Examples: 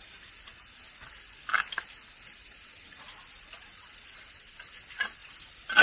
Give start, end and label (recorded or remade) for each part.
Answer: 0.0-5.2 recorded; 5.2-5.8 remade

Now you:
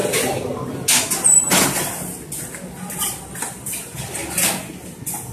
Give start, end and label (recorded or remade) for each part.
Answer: 0.0-5.3 recorded

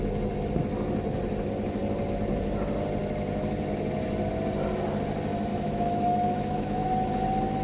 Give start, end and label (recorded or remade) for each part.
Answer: 0.0-5.5 recorded; 5.5-6.9 remade; 6.9-7.6 recorded

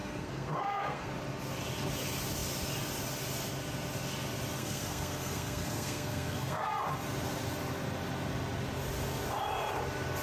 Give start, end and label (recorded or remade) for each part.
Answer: 0.0-1.1 remade; 1.1-4.6 recorded; 4.6-6.7 remade; 6.7-10.2 recorded